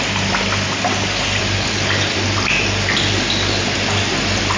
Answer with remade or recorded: recorded